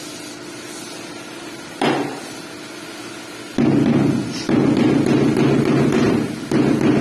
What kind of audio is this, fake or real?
real